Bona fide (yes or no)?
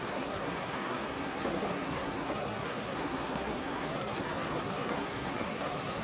no